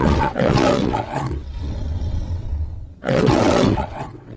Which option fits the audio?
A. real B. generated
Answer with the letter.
B